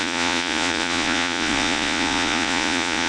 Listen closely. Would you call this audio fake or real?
fake